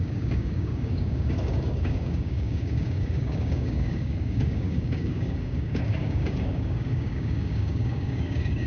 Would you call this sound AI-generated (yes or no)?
yes